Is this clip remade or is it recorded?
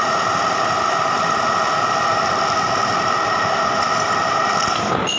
recorded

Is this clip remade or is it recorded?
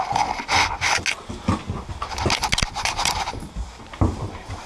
recorded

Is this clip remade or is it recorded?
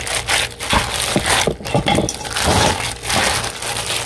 recorded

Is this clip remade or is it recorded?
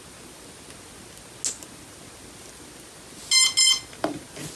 recorded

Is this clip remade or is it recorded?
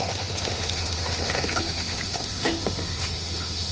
remade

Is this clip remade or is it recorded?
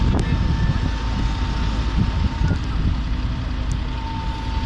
recorded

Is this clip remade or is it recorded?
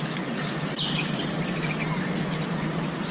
recorded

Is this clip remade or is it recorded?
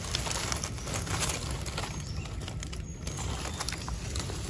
recorded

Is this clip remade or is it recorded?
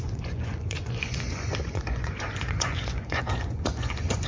remade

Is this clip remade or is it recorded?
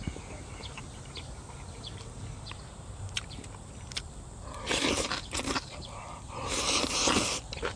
remade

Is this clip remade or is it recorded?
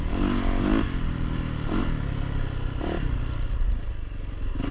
recorded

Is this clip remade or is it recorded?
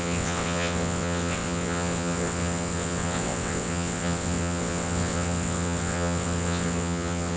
remade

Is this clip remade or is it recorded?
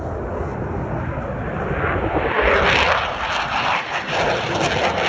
recorded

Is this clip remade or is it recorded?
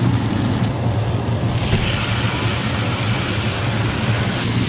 recorded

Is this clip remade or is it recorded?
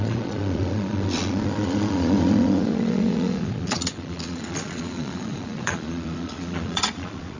remade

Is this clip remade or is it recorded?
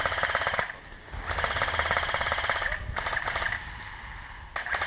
recorded